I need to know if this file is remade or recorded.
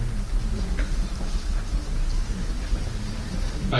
recorded